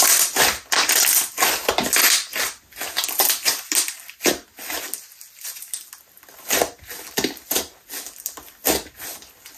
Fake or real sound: real